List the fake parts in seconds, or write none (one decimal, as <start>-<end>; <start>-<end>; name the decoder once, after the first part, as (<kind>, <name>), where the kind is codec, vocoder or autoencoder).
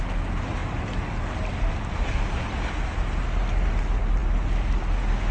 none